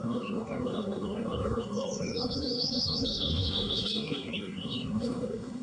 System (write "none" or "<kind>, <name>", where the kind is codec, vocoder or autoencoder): codec, SNAC